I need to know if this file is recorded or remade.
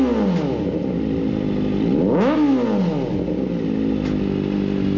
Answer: recorded